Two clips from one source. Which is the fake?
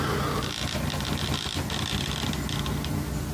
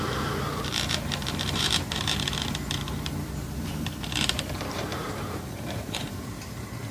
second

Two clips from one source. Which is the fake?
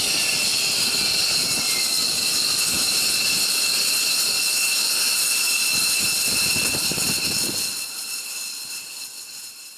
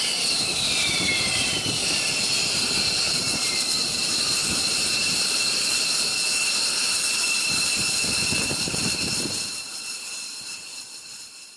second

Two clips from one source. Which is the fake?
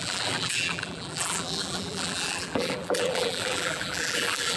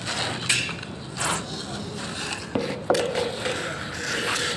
first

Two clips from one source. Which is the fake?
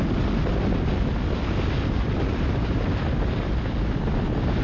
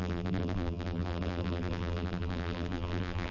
second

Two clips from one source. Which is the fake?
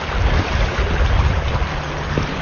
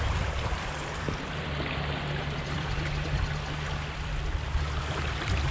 second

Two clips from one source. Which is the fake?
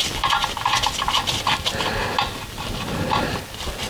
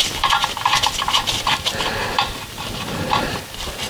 second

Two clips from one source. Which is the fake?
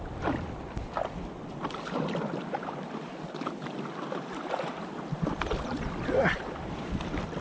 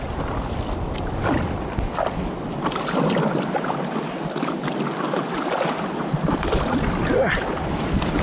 first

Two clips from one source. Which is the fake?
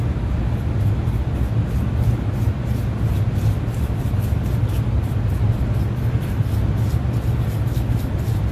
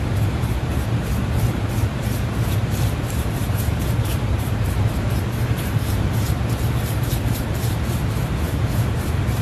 second